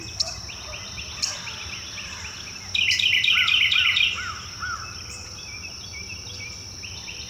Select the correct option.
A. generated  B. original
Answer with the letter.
A